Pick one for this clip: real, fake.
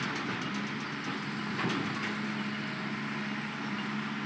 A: real